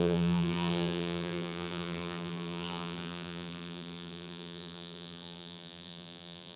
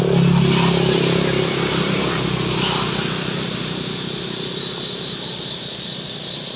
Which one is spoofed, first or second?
first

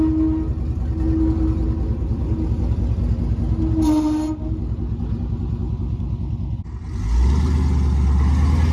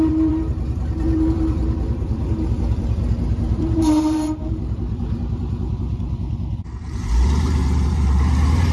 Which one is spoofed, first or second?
second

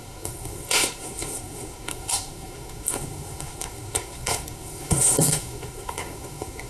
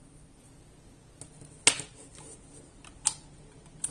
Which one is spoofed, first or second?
first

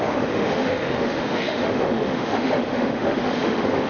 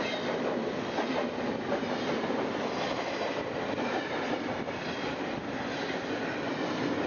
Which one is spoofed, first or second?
first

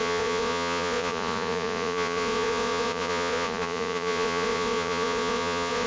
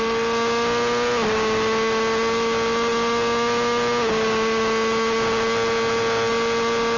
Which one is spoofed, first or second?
first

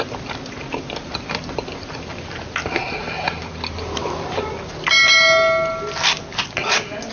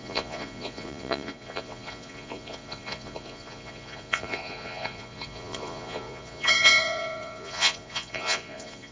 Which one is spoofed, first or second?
second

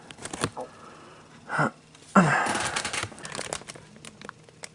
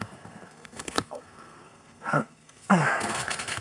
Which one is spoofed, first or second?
second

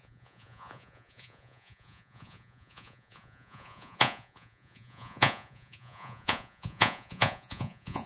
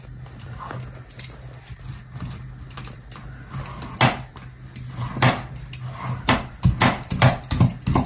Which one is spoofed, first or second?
first